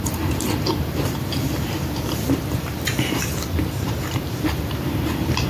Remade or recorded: remade